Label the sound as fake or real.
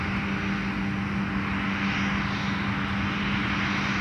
real